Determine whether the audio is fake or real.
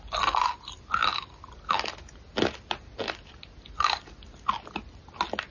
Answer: real